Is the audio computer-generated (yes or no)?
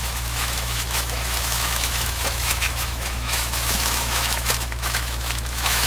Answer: yes